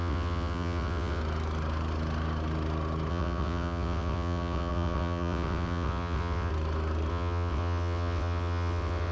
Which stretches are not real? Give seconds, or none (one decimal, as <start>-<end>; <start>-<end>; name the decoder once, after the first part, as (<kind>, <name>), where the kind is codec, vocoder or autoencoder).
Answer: 0.0-1.2 (vocoder, WaveNeXt); 3.1-6.5; 7.1-9.1